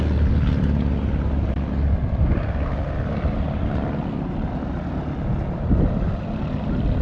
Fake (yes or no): no